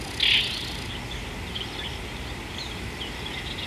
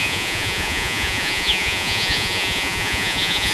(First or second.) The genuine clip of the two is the first